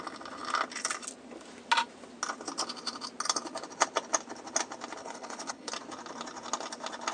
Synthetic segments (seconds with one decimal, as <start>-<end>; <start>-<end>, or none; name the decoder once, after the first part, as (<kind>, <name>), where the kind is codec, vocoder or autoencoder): 5.0-5.7 (codec, HILCodec)